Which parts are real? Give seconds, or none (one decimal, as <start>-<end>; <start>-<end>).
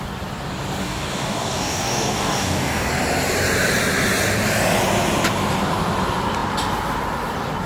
0.0-0.8; 2.9-7.7